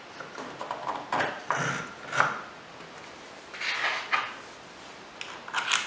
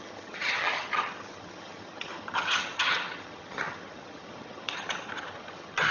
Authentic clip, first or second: first